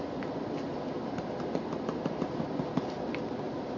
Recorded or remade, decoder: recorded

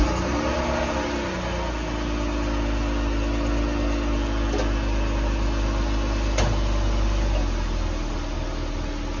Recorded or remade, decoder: recorded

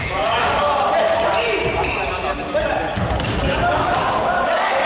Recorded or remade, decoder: recorded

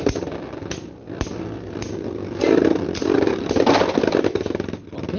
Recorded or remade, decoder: recorded